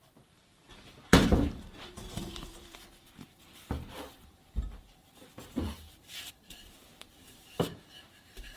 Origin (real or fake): fake